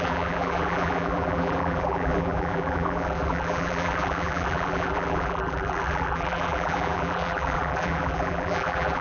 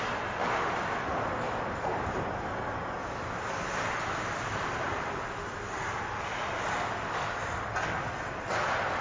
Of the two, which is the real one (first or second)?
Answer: second